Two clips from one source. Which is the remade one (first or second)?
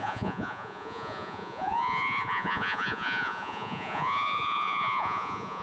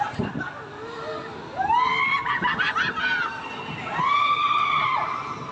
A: first